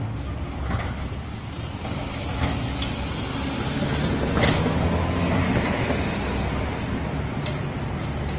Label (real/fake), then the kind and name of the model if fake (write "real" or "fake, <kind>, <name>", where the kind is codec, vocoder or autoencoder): real